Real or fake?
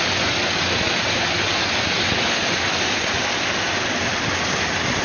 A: real